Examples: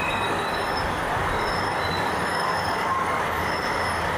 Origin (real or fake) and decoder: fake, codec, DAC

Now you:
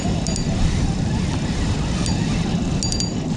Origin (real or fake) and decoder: real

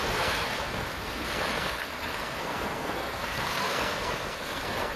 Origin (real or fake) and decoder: fake, codec, SNAC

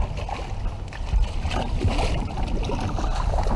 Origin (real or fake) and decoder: real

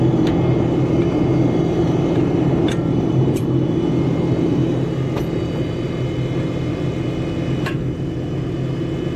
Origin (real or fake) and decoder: real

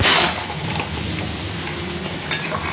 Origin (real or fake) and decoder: real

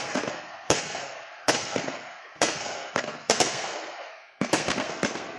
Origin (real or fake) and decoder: fake, codec, SNAC